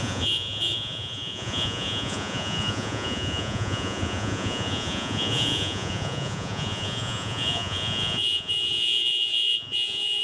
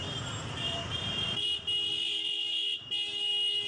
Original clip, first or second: second